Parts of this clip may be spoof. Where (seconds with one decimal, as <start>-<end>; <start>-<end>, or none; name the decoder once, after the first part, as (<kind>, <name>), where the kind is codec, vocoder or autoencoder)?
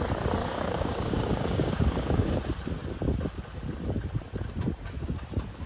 0.4-2.3 (codec, DAC)